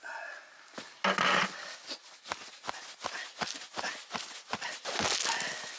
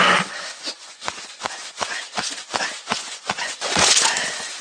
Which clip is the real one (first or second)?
first